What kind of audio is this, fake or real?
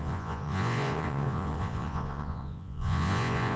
fake